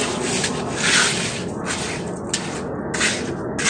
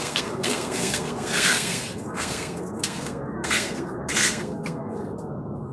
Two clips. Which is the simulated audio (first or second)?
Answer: second